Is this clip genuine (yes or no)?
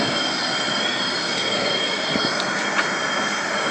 yes